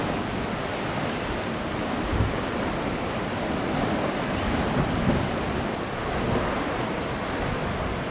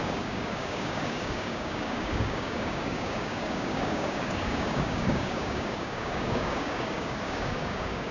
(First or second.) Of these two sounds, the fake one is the second